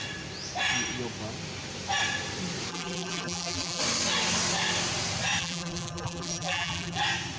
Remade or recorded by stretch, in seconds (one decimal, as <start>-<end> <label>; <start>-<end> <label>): 0.0-2.7 recorded; 2.7-3.8 remade; 3.8-5.4 recorded; 5.4-7.0 remade; 7.0-7.4 recorded